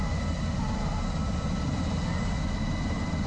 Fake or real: real